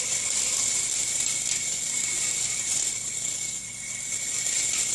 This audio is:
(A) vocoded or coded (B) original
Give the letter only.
A